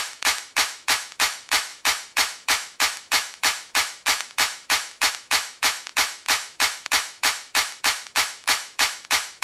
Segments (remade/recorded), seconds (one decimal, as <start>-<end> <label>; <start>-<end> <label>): 0.0-9.4 remade